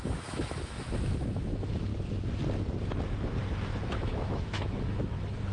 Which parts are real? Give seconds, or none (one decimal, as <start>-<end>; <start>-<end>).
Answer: 1.9-3.9